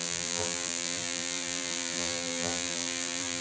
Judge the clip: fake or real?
fake